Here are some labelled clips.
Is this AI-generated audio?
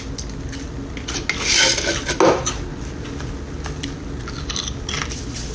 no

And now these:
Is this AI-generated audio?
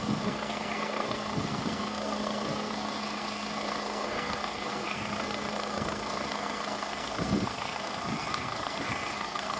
yes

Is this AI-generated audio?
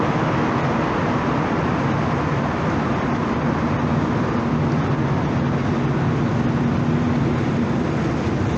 no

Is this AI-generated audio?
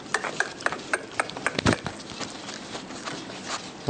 no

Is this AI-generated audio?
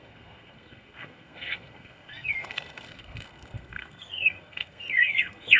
yes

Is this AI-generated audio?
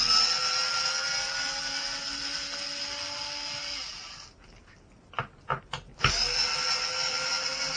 no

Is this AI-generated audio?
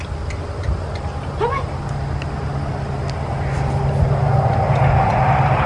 no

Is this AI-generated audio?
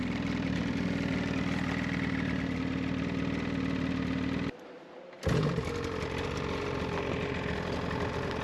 no